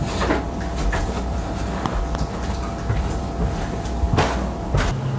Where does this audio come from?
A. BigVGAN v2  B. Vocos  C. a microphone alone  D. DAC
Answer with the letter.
C